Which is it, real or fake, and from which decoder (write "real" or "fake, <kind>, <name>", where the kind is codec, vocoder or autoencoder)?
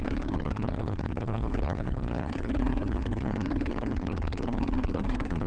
fake, codec, SNAC